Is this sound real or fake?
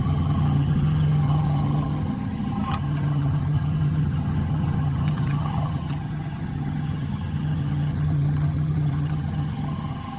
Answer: fake